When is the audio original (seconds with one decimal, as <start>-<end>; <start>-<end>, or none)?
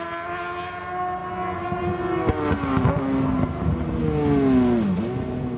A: 0.0-5.6